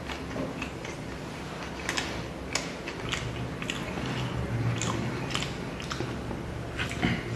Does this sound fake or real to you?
real